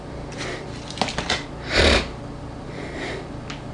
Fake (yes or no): no